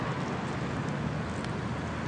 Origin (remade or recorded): recorded